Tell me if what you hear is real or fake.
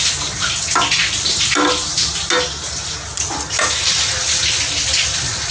real